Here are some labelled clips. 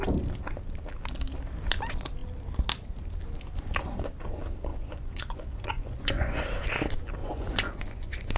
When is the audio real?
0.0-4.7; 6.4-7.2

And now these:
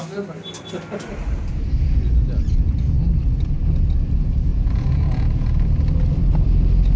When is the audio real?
0.0-4.5; 5.7-7.0

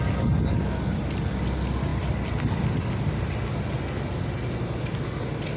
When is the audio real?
0.0-5.6

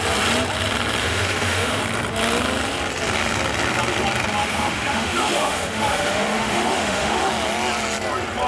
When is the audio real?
0.0-1.0; 1.8-4.4; 7.3-8.5

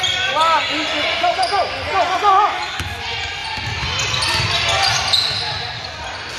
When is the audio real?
0.0-6.4

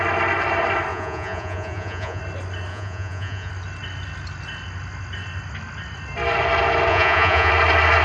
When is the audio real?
0.0-0.9; 2.2-2.7; 3.5-6.9; 7.5-8.0

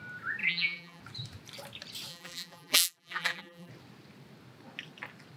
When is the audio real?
0.0-0.4; 1.0-2.1; 3.7-5.4

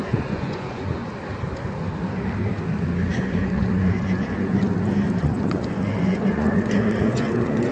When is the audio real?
1.0-3.2; 4.5-5.2